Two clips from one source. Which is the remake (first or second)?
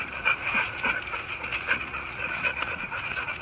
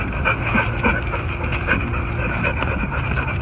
first